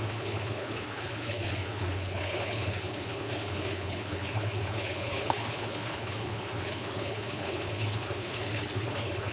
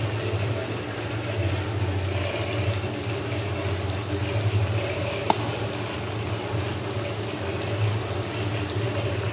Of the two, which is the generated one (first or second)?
first